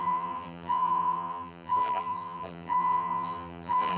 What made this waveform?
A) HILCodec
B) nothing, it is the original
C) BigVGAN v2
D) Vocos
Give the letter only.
C